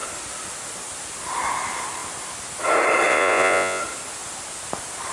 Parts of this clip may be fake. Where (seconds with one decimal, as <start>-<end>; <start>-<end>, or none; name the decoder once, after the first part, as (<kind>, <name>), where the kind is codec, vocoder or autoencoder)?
3.1-3.8 (vocoder, Vocos)